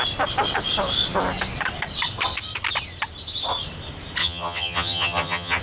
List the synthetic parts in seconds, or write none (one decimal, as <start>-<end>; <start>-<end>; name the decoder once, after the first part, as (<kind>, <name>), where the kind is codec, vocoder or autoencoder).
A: 4.2-5.6 (vocoder, HiFi-GAN)

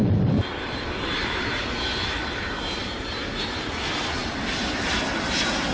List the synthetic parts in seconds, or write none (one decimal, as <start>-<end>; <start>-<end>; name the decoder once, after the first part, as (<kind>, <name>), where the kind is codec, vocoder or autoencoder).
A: 0.0-3.4 (vocoder, BigVGAN v2); 4.2-5.0